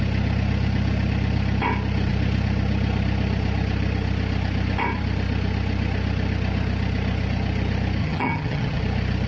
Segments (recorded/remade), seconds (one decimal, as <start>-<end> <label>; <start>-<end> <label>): 0.0-8.0 recorded; 8.0-8.8 remade; 8.8-9.3 recorded